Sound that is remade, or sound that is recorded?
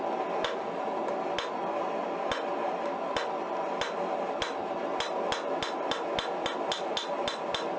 recorded